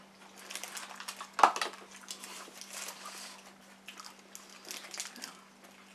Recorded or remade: recorded